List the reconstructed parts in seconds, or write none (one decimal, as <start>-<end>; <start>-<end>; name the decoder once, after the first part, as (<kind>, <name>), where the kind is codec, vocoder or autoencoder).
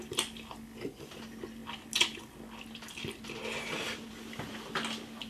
none